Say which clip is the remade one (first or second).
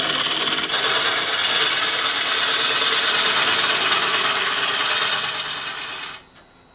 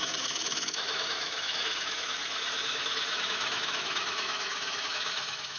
second